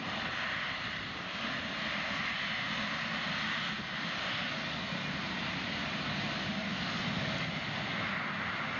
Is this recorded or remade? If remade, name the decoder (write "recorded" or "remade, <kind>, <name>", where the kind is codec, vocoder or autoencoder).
recorded